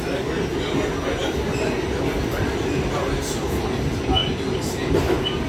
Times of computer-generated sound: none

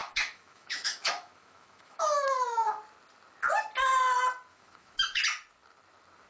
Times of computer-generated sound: 0.0-2.8 (autoencoder, DAC-VAE); 4.5-5.2

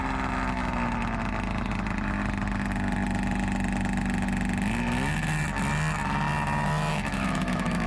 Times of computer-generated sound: 6.9-7.9 (autoencoder, DAC-VAE)

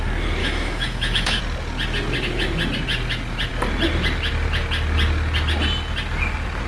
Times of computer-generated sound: 0.4-1.4 (autoencoder, DAC-VAE)